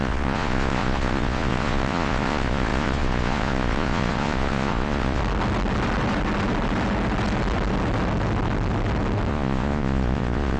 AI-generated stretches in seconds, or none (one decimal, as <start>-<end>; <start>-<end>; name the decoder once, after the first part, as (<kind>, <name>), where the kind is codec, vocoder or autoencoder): 0.0-5.2 (vocoder, Vocos); 9.3-10.6